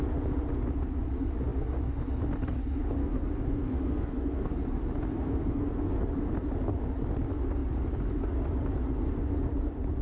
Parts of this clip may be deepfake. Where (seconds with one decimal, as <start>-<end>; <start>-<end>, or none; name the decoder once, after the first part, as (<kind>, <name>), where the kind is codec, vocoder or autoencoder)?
3.0-4.5 (codec, SNAC); 5.1-5.9